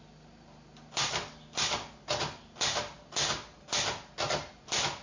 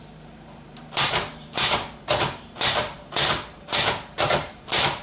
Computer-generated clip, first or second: second